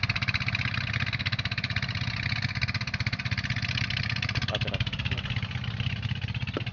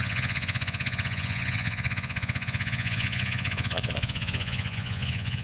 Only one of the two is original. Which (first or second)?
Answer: first